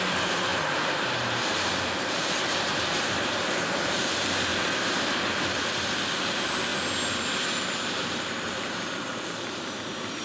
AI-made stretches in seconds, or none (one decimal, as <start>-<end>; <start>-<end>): 0.0-4.5; 6.2-6.7; 7.8-10.2